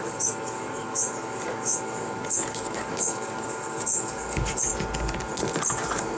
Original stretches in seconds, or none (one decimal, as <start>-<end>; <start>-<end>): 4.7-6.2